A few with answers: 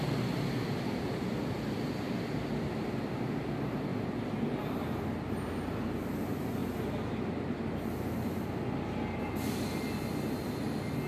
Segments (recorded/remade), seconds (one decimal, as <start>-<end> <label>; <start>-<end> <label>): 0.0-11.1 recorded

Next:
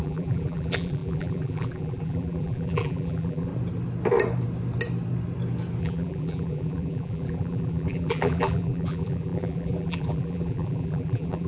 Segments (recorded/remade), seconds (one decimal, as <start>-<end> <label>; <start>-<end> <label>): 0.0-3.5 remade; 3.5-5.8 recorded; 5.8-11.5 remade

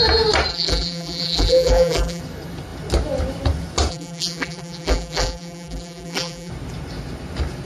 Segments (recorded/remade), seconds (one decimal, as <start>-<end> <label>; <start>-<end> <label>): 0.0-0.5 recorded; 0.5-2.2 remade; 2.2-3.9 recorded; 3.9-6.5 remade; 6.5-7.7 recorded

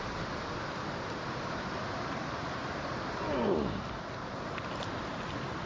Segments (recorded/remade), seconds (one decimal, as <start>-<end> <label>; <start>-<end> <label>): 0.0-0.6 recorded; 0.6-4.0 remade; 4.0-5.7 recorded

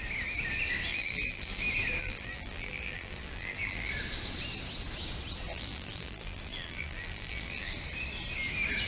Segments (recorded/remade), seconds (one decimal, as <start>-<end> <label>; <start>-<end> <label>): 0.0-0.9 recorded; 0.9-1.6 remade; 1.6-2.0 recorded; 2.0-3.9 remade; 3.9-5.5 recorded; 5.5-7.7 remade; 7.7-8.9 recorded